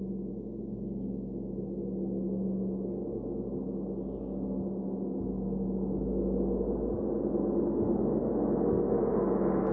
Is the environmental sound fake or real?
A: real